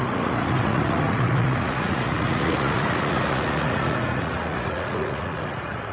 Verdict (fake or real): fake